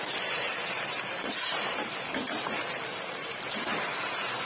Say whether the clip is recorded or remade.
remade